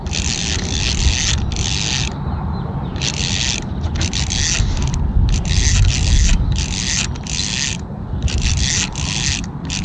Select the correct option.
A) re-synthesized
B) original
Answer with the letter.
B